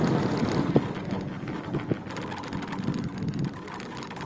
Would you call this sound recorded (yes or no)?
yes